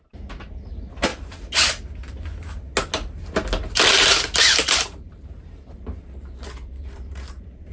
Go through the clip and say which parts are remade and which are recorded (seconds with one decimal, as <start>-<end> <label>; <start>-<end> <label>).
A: 0.0-1.1 remade; 1.1-4.4 recorded; 4.4-7.7 remade